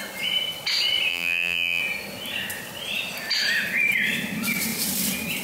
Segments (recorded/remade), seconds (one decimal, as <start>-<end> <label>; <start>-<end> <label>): 0.0-1.1 recorded; 1.1-1.8 remade; 1.8-5.4 recorded